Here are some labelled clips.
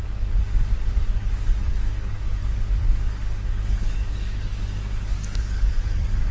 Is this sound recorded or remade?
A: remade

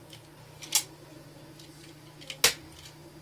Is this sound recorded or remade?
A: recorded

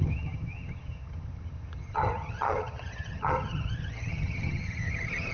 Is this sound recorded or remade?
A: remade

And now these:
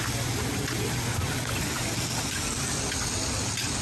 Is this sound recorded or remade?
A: recorded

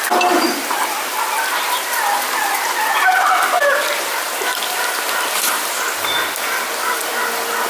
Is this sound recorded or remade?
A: recorded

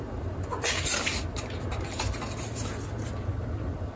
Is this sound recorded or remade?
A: recorded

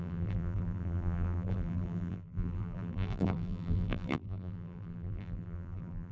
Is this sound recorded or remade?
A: remade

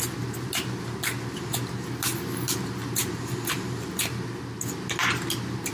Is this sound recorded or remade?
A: recorded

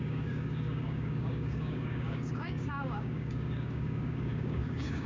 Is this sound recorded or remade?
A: remade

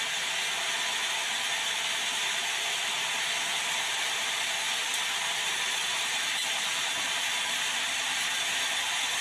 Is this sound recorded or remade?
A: remade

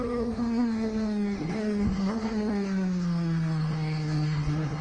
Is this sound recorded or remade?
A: remade